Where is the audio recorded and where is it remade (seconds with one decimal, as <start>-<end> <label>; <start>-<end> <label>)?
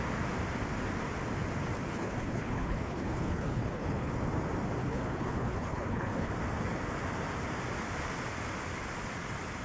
0.0-1.9 recorded; 1.9-4.1 remade; 4.1-4.8 recorded; 4.8-6.3 remade; 6.3-9.6 recorded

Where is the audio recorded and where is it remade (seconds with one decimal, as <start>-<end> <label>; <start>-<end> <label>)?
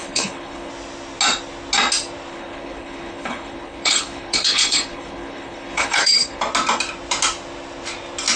0.0-0.7 remade; 0.7-2.3 recorded; 2.3-6.4 remade; 6.4-8.4 recorded